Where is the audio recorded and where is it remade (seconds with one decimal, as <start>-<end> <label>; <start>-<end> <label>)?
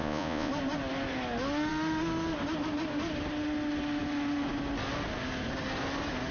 0.0-0.5 remade; 0.5-6.3 recorded